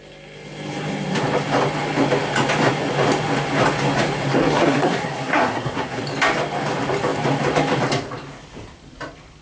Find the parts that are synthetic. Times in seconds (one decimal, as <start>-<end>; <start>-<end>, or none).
4.4-6.0